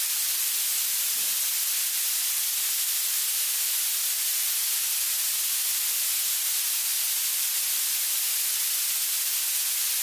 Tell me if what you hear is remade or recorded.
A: recorded